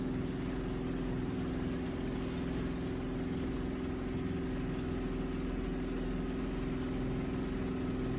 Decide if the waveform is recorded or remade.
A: recorded